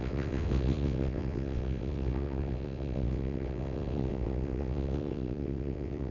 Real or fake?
fake